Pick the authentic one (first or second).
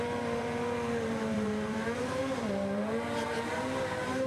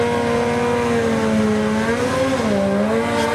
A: second